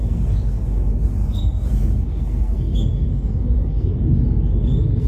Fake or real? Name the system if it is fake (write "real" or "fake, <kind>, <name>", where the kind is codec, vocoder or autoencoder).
fake, codec, SNAC